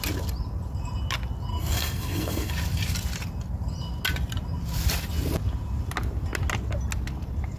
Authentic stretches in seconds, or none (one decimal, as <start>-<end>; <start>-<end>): 0.0-1.5; 2.5-7.6